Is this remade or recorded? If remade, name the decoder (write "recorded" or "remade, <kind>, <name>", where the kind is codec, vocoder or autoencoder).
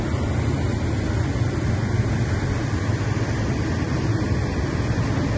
recorded